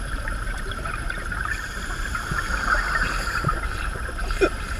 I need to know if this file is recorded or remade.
remade